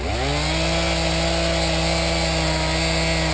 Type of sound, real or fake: real